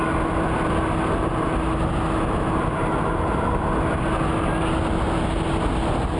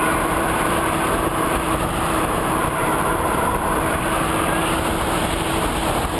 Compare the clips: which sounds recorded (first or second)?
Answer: first